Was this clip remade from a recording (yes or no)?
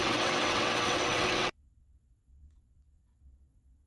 yes